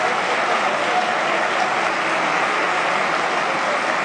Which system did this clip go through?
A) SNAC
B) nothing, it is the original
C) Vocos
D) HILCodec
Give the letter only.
B